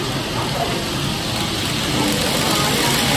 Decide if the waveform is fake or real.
real